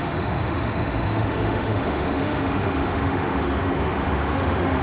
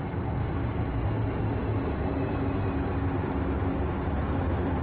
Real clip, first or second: second